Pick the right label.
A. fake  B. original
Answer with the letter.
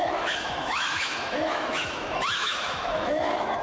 A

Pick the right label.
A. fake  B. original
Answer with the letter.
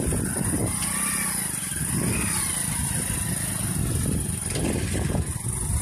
B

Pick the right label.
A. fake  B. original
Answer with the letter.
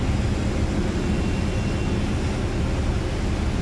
B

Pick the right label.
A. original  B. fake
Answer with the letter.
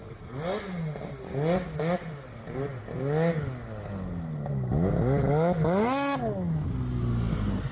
A